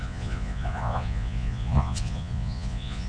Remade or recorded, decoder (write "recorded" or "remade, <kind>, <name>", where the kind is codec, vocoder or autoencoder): remade, vocoder, Vocos